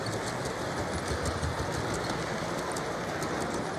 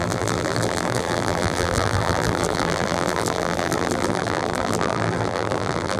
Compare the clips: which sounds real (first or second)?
first